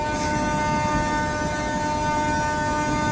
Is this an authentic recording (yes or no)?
yes